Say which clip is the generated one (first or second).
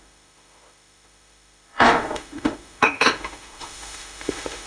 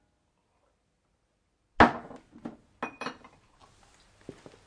first